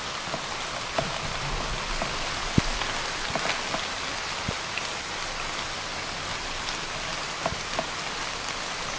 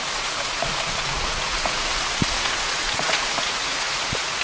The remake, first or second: second